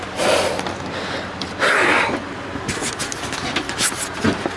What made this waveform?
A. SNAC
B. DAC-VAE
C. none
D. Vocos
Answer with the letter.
C